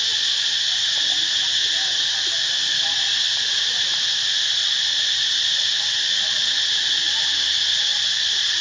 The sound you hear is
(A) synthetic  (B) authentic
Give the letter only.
B